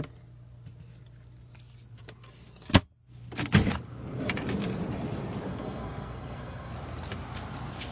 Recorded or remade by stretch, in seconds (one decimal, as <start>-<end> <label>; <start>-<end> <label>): 0.0-5.5 recorded; 5.5-6.7 remade; 6.7-7.9 recorded